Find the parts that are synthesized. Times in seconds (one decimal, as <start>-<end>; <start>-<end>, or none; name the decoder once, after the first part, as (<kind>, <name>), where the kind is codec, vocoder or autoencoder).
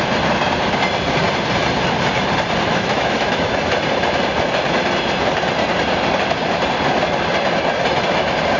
2.7-3.5 (autoencoder, DAC-VAE)